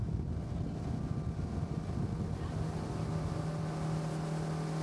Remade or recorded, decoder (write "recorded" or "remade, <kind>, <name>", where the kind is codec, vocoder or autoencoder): recorded